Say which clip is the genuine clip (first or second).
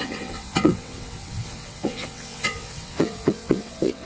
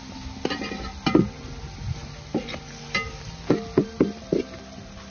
second